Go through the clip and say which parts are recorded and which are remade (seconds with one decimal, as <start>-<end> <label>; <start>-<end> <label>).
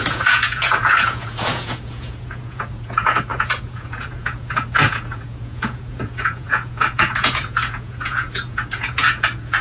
0.0-9.6 remade